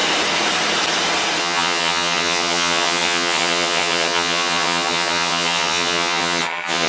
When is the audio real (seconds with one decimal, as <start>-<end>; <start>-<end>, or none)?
0.0-1.4